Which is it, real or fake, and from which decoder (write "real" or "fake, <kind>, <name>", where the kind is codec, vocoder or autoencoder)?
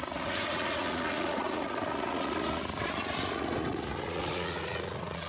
fake, vocoder, Vocos